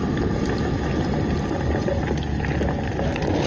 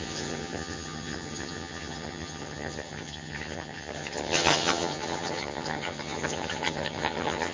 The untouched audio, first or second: first